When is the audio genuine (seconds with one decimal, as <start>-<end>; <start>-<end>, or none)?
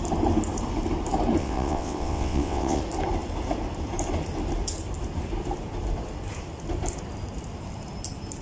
0.0-1.4; 2.8-8.4